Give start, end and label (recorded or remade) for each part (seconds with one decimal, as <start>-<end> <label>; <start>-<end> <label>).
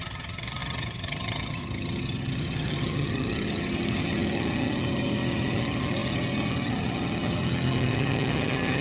0.0-8.8 remade